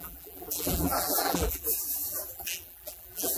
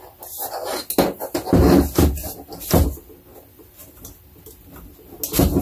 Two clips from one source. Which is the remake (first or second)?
first